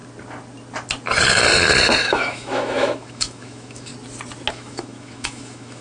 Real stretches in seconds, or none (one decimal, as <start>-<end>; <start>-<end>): 0.0-2.0; 3.9-4.5